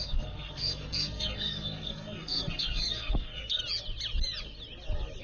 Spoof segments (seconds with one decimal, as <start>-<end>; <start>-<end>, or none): 0.0-3.6